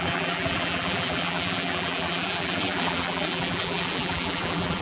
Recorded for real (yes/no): no